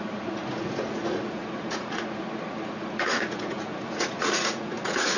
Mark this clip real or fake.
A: fake